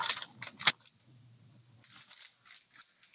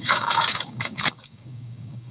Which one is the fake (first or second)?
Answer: second